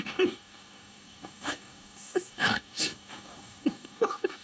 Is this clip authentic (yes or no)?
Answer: no